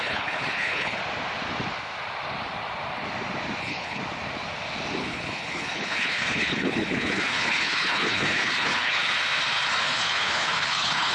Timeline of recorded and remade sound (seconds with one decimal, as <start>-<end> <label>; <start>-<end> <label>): 0.0-1.0 remade; 1.0-3.6 recorded; 3.6-4.0 remade; 4.0-5.0 recorded; 5.0-9.0 remade; 9.0-9.8 recorded; 9.8-11.1 remade

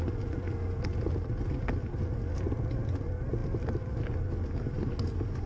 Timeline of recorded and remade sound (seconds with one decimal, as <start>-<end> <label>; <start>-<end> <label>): 0.0-5.5 recorded

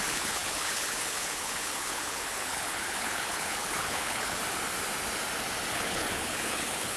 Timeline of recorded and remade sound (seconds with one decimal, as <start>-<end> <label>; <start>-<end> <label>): 0.0-4.4 remade; 4.4-5.7 recorded; 5.7-7.0 remade

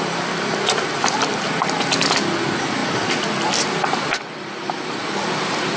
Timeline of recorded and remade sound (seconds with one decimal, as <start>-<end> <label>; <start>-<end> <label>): 0.0-5.8 recorded